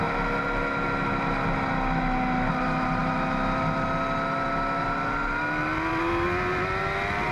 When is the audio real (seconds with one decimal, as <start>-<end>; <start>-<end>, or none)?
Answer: 0.0-7.3